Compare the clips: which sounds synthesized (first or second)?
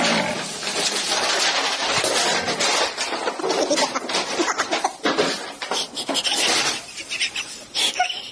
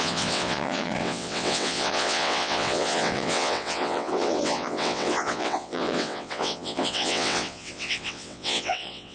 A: second